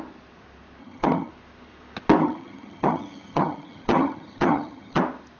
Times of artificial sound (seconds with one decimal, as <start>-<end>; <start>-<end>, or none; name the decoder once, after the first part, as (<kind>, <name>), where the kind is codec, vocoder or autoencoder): 0.8-1.3 (vocoder, HiFi-GAN); 2.2-5.0